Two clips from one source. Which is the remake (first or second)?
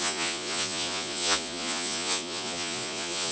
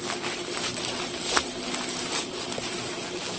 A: first